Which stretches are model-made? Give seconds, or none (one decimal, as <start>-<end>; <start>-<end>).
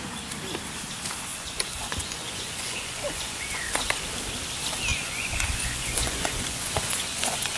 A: 1.3-4.0; 4.9-7.6